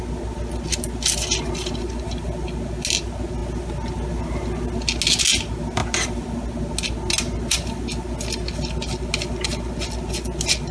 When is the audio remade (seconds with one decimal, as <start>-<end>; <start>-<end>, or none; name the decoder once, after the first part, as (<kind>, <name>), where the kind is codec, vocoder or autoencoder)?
none

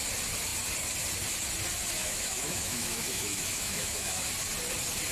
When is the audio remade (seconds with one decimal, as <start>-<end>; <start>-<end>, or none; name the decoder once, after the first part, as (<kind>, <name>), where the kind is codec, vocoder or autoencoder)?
2.0-4.3 (autoencoder, DAC-VAE)

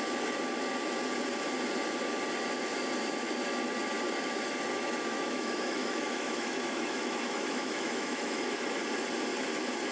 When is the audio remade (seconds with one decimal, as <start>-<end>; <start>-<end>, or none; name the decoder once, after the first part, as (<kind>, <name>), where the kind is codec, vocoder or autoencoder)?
4.7-8.8 (autoencoder, DAC-VAE)

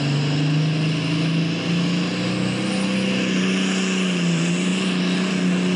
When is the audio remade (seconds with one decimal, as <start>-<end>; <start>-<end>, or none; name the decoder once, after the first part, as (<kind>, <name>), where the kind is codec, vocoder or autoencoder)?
none

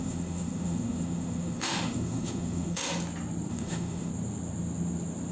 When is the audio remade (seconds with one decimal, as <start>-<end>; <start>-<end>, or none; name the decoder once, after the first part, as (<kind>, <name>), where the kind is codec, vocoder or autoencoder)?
0.0-2.8 (autoencoder, DAC-VAE); 3.5-4.1

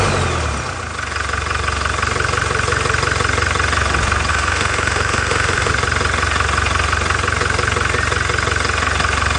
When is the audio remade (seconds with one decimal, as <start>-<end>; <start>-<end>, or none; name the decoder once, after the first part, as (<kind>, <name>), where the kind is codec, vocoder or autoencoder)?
4.3-5.7 (autoencoder, DAC-VAE)